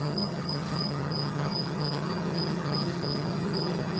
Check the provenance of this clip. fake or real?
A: fake